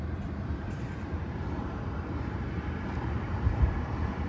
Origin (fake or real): fake